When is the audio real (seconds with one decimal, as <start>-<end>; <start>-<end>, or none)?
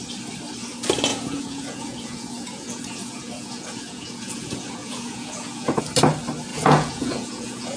0.0-1.1; 5.8-6.5